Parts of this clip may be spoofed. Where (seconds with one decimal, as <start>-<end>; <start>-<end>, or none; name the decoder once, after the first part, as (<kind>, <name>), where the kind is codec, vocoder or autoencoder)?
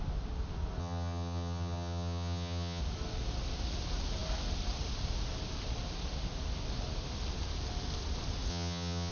0.8-2.8 (vocoder, HiFi-GAN); 8.5-9.1